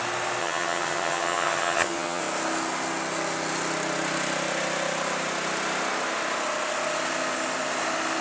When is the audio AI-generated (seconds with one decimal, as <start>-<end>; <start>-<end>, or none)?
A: 0.4-2.2